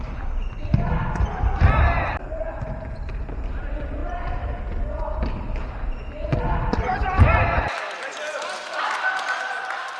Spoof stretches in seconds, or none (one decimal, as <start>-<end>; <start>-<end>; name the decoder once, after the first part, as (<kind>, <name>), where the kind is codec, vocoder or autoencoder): none

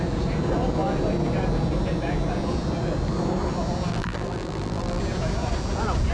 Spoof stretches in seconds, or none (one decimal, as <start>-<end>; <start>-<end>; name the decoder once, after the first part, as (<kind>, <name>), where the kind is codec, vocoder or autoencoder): 3.9-5.0 (vocoder, BigVGAN v2)

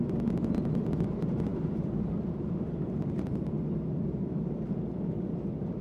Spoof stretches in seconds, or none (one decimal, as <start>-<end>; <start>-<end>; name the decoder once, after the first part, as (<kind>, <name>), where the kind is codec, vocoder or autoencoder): none

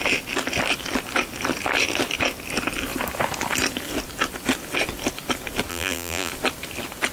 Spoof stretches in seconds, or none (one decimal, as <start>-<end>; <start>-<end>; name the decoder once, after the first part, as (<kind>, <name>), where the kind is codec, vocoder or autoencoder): 5.7-6.3 (vocoder, BigVGAN v2)

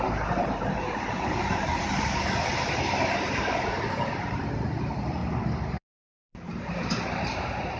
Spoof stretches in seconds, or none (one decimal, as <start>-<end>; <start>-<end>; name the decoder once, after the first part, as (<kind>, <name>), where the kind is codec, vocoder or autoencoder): 0.0-5.2 (vocoder, BigVGAN v2); 5.7-7.8